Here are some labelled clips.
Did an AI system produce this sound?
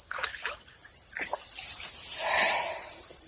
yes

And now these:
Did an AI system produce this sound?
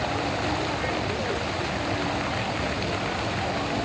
no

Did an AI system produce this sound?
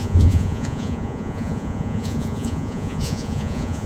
yes